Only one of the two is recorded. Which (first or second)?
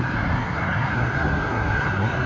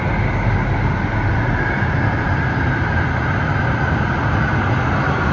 second